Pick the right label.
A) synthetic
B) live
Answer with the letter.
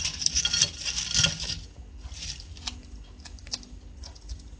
B